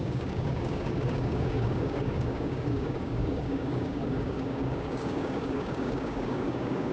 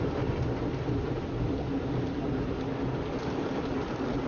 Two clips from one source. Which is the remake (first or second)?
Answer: first